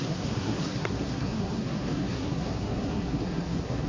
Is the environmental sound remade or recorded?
remade